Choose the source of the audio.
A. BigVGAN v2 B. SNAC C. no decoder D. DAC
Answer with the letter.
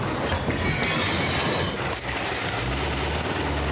C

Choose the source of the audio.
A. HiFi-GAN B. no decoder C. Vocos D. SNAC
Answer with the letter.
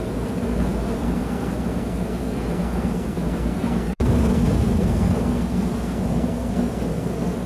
D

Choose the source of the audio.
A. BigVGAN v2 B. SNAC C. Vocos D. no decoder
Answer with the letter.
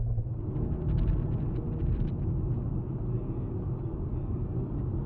D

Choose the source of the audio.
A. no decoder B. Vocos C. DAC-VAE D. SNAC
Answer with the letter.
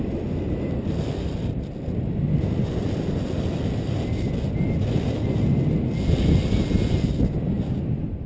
A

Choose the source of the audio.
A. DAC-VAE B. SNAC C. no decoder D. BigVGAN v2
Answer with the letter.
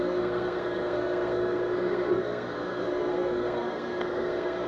B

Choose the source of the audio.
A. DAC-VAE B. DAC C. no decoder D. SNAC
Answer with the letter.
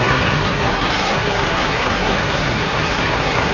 D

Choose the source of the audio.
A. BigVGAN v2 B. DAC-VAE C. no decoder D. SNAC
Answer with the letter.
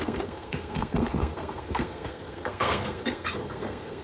D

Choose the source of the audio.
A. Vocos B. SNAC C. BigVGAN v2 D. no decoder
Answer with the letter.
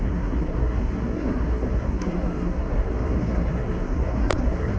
B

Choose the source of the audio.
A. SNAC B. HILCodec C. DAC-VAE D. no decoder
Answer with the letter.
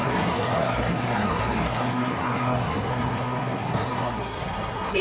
A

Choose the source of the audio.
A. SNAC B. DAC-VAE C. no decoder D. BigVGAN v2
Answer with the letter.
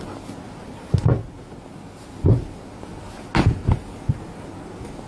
C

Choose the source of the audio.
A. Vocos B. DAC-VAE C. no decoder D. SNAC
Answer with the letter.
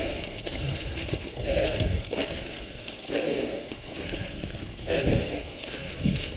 D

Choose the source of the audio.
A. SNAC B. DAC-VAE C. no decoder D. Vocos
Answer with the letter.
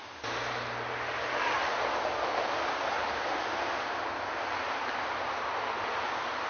C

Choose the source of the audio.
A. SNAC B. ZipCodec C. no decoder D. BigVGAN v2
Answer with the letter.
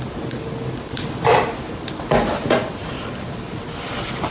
C